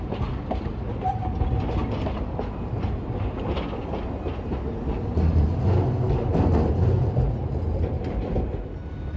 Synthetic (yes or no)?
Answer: no